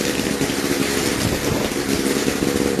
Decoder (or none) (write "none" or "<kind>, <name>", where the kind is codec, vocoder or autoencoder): none